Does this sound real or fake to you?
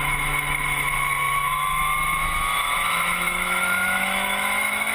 fake